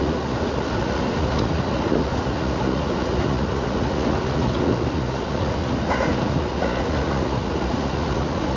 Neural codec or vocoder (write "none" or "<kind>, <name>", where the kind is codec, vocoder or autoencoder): vocoder, Vocos